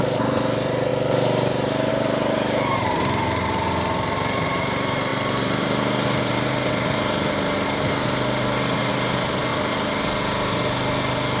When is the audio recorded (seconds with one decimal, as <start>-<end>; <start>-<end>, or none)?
0.9-1.9; 9.5-11.4